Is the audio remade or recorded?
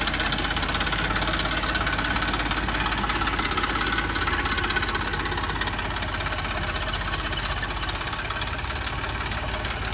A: recorded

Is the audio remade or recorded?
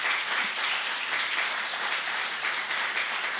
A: recorded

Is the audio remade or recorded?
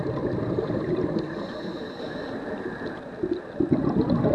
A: recorded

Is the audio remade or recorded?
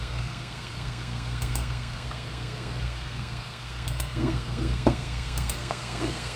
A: remade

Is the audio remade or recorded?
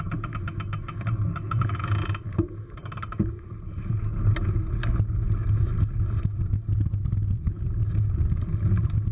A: recorded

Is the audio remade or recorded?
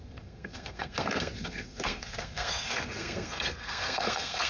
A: remade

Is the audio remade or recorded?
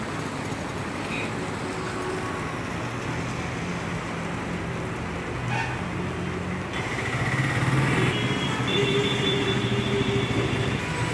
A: recorded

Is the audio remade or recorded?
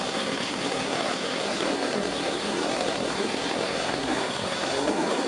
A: remade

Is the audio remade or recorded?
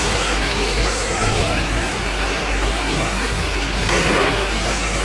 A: remade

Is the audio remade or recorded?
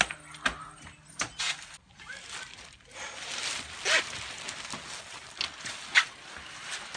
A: recorded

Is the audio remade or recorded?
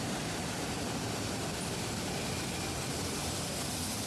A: recorded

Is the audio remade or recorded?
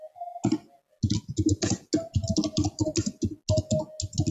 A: recorded